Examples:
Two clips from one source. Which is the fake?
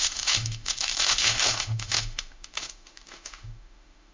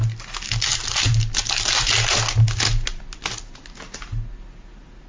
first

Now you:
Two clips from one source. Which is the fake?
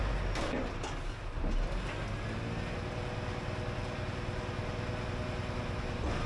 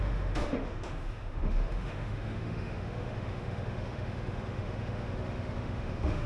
second